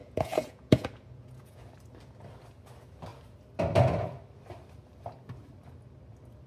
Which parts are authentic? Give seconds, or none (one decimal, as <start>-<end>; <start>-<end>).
1.7-6.5